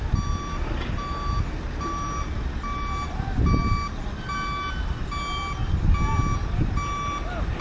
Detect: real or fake real